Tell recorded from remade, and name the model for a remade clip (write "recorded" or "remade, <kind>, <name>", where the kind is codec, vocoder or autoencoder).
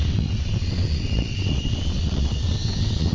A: remade, vocoder, WaveNeXt